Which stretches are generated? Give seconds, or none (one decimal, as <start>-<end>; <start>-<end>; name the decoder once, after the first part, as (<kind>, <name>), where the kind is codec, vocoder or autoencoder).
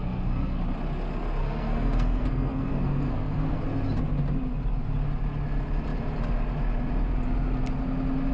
0.0-0.6 (codec, SNAC); 1.4-3.6